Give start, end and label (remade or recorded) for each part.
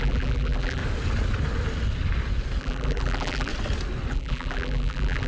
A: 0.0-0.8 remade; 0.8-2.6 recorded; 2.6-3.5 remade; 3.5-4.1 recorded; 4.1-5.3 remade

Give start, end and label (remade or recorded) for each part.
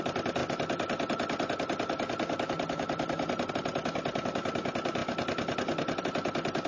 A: 0.0-0.4 remade; 0.4-3.5 recorded; 3.5-5.0 remade; 5.0-6.0 recorded; 6.0-6.7 remade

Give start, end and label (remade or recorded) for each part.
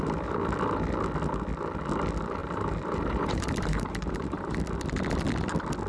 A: 0.0-2.4 recorded; 2.4-4.6 remade; 4.6-5.9 recorded